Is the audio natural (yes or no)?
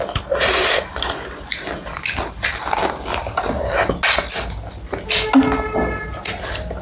yes